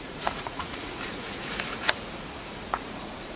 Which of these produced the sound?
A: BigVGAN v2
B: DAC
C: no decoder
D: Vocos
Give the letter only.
D